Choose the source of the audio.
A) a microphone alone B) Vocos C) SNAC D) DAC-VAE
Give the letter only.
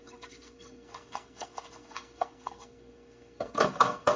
C